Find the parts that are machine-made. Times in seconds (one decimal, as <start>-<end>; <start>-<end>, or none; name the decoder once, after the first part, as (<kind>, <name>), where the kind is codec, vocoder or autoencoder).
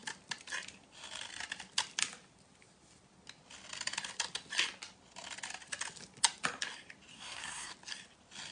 7.1-7.7 (codec, SNAC)